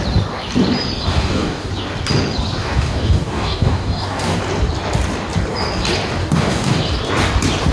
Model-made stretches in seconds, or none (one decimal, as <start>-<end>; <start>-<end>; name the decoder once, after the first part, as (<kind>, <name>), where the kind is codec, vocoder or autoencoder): 1.1-1.7 (codec, DAC); 2.6-4.4; 6.2-6.8